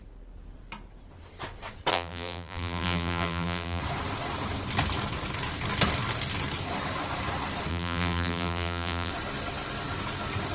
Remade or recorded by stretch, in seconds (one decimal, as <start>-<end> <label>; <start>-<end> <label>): 0.0-1.9 recorded; 1.9-3.8 remade; 3.8-7.7 recorded; 7.7-9.1 remade; 9.1-10.5 recorded